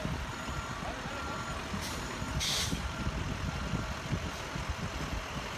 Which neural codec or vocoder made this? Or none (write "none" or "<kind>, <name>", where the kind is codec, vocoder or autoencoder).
none